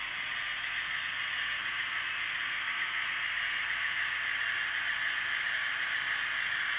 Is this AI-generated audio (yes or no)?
no